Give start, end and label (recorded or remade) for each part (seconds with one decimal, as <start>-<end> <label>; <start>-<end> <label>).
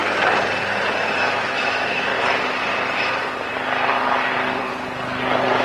0.0-1.2 recorded; 1.2-2.1 remade; 2.1-5.6 recorded